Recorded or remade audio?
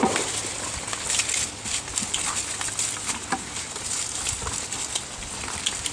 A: recorded